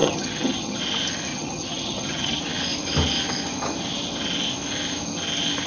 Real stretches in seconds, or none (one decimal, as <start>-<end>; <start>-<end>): 0.8-1.3; 2.4-5.7